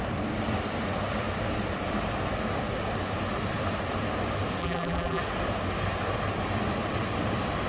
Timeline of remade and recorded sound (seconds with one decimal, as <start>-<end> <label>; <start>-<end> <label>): 0.0-4.6 recorded; 4.6-5.2 remade; 5.2-7.7 recorded